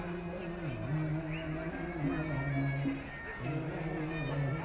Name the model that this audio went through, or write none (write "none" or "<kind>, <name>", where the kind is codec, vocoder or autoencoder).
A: none